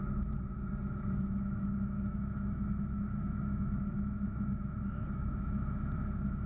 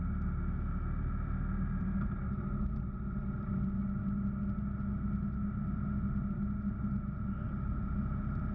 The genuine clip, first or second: second